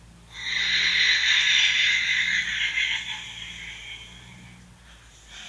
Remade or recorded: recorded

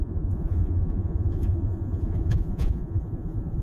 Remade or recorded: remade